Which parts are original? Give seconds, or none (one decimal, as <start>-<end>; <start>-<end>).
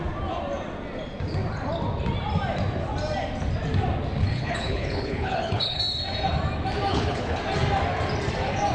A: 0.0-4.2; 5.8-6.9; 7.4-8.7